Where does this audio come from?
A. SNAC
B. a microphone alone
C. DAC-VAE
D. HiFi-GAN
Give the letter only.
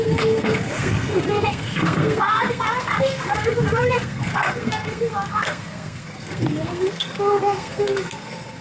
A